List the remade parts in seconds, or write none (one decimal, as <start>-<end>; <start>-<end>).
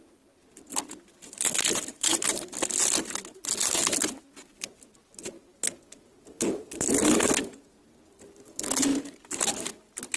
1.9-2.5; 6.3-6.9